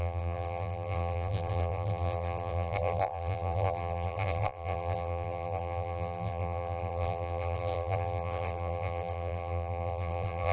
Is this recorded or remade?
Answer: remade